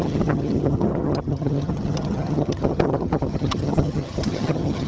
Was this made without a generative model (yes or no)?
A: no